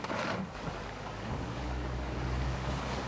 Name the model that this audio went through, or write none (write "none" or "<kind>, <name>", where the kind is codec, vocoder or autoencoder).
codec, DAC